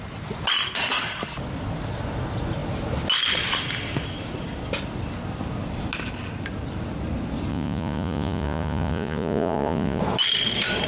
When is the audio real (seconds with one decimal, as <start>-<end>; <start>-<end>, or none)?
0.0-7.5; 10.0-10.9